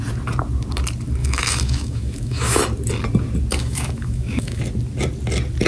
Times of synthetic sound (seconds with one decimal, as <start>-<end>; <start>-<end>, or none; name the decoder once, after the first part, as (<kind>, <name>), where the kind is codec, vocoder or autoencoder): 1.2-2.6 (autoencoder, DAC-VAE); 3.6-4.6